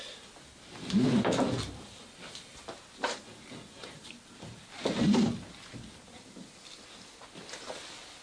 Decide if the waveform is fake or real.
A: real